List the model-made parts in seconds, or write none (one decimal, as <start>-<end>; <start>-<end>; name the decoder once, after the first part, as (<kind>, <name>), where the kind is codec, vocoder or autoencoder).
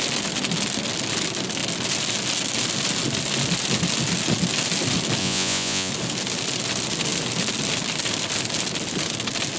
5.2-5.9 (vocoder, Vocos)